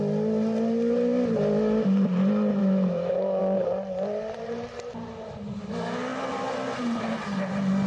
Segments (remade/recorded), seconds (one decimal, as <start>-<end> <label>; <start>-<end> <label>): 0.0-2.6 recorded; 2.6-3.4 remade; 3.4-7.9 recorded